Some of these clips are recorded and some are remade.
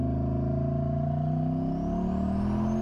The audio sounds recorded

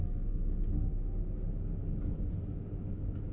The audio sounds recorded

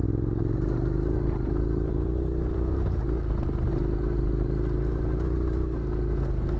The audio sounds recorded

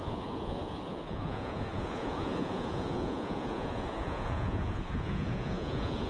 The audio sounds remade